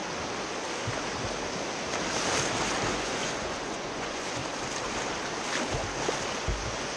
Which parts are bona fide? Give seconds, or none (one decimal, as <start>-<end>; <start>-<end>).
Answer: 0.0-2.9; 4.4-6.3